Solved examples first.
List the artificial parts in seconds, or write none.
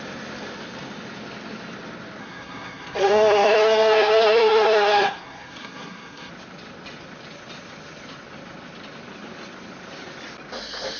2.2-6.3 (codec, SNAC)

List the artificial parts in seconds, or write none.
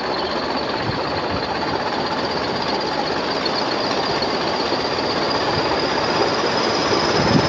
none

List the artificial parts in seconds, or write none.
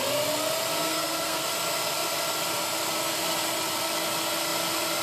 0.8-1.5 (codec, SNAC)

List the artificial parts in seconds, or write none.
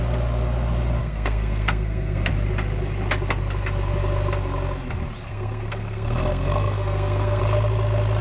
1.0-2.3 (codec, SNAC); 5.3-7.4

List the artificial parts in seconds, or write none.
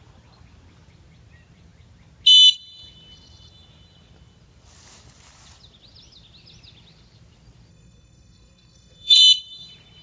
7.7-9.2 (codec, SNAC)